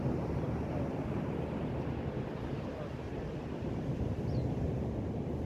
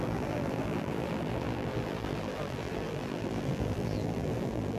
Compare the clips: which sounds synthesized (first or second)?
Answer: second